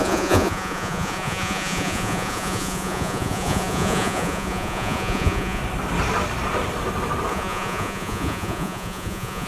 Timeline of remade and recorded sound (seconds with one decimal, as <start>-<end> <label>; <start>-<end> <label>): 0.0-5.6 remade; 5.6-7.3 recorded; 7.3-9.5 remade